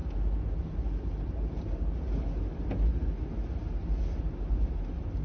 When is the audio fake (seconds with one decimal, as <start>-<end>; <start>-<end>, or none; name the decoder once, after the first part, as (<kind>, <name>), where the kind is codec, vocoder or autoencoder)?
none